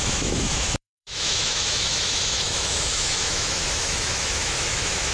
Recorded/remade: remade